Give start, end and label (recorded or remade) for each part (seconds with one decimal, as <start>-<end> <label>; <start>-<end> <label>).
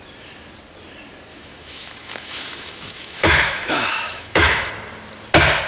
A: 0.0-1.3 recorded; 1.3-4.7 remade; 4.7-5.7 recorded